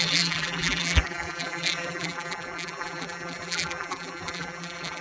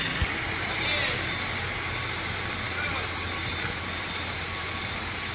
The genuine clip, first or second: second